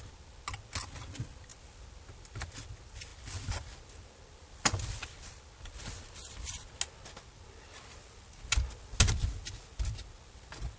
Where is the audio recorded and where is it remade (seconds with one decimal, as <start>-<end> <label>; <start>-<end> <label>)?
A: 0.0-10.8 recorded